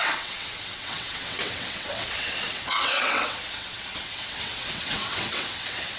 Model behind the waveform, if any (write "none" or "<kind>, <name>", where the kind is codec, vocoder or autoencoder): vocoder, WaveNeXt